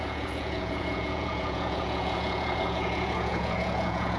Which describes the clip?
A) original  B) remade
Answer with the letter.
B